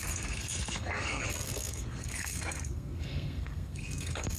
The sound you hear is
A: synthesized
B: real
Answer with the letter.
A